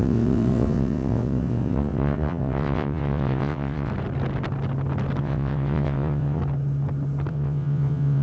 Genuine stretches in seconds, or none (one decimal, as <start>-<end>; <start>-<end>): 3.9-5.2; 6.4-7.3